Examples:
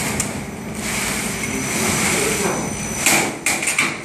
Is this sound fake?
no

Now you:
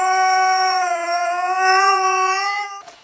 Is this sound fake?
yes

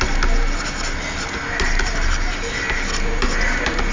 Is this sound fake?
no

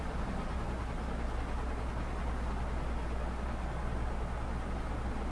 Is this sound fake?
no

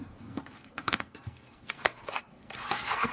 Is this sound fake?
yes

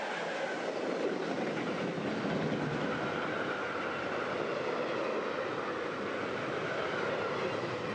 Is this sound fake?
no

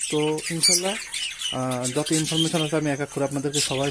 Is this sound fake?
no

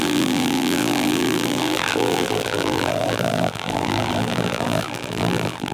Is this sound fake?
yes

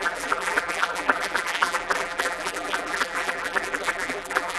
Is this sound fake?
yes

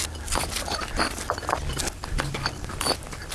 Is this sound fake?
no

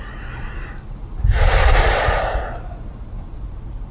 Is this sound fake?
no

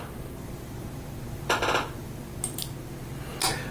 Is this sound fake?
no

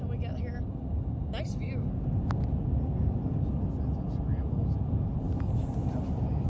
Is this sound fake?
no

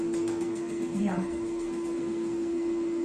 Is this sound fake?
yes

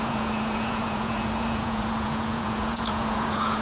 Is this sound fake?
yes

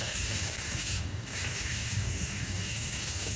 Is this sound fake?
yes